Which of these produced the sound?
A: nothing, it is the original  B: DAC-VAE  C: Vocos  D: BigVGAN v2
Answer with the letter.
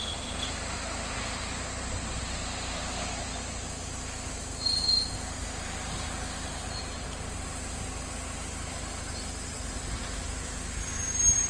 A